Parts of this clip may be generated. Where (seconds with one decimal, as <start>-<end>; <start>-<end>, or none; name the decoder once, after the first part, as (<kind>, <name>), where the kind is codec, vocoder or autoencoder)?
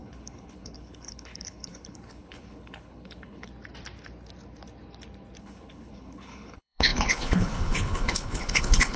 0.0-3.5 (codec, HILCodec); 5.4-9.0